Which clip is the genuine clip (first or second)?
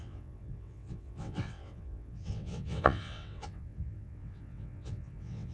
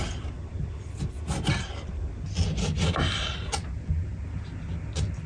second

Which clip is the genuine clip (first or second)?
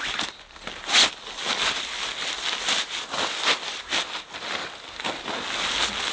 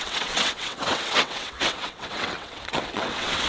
first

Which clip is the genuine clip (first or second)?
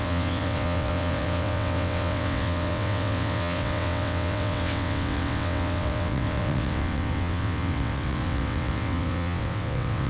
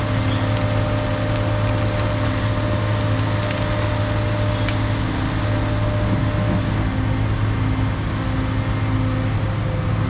second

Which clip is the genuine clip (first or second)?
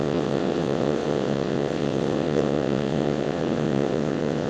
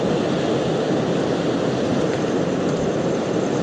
second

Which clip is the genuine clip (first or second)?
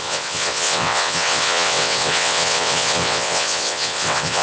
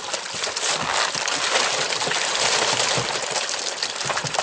second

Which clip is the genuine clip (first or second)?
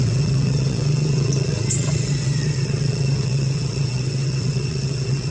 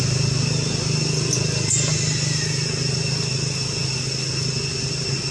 second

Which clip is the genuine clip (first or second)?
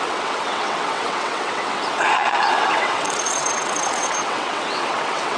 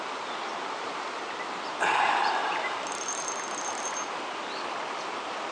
second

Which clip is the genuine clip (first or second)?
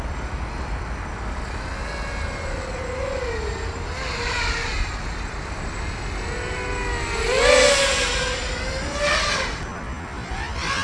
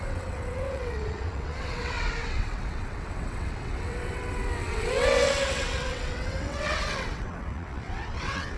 first